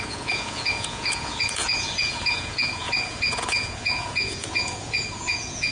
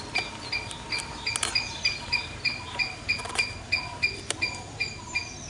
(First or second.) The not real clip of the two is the first